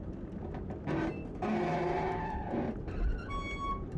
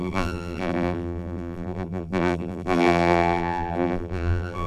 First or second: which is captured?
first